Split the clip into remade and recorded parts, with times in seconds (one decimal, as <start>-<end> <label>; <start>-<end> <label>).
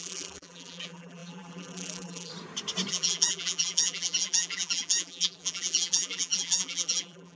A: 0.0-2.3 remade; 2.3-2.9 recorded; 2.9-7.4 remade